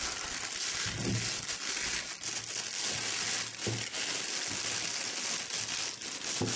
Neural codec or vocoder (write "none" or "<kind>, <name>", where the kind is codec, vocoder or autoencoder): none